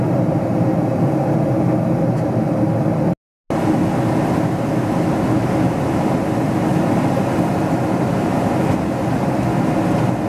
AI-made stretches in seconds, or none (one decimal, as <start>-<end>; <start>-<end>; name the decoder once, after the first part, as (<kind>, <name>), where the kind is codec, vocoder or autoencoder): none